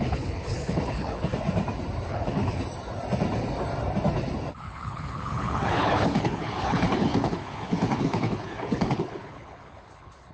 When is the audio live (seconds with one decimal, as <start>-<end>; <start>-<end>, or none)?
1.3-2.1; 2.6-4.5